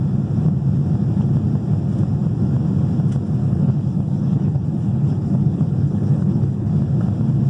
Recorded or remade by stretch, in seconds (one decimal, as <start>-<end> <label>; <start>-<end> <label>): 0.0-3.4 recorded; 3.4-6.7 remade; 6.7-7.5 recorded